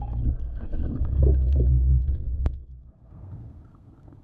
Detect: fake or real fake